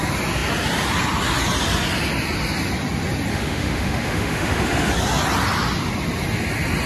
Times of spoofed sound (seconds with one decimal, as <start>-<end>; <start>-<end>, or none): 3.3-4.9